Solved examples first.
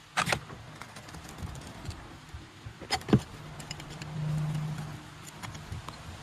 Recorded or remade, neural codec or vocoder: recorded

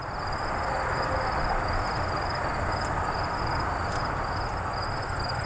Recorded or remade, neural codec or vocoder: recorded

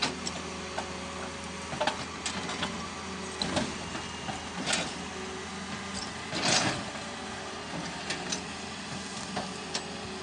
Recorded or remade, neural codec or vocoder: recorded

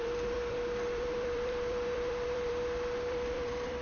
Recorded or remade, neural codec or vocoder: remade, vocoder, BigVGAN v2